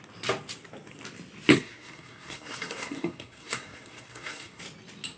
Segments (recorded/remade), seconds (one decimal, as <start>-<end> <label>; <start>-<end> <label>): 0.0-1.5 recorded; 1.5-4.6 remade; 4.6-5.2 recorded